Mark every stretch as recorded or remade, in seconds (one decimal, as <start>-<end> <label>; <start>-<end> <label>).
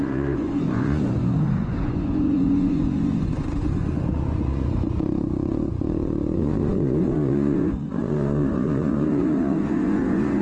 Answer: 0.0-10.4 remade